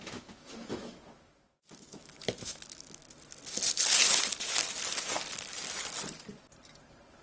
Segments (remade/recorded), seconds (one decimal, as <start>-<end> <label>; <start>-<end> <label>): 0.0-3.0 remade; 3.0-7.2 recorded